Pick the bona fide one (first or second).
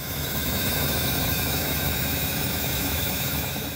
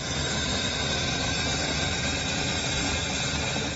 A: second